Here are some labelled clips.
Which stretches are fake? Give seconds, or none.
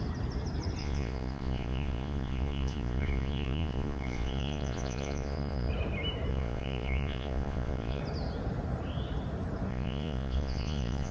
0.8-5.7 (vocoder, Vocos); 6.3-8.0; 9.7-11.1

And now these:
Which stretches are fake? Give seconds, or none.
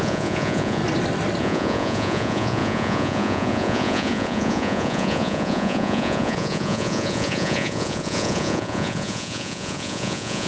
0.0-0.8 (vocoder, Vocos); 1.4-10.5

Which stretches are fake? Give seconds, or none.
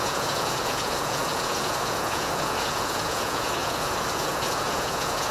0.0-5.3 (vocoder, Vocos)